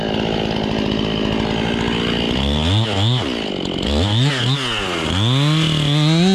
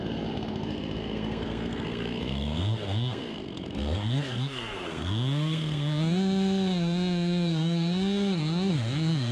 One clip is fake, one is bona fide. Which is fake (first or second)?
second